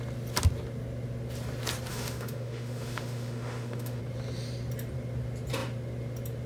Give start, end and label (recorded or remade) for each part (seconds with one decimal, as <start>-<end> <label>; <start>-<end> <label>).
0.0-1.9 recorded; 1.9-4.0 remade; 4.0-6.5 recorded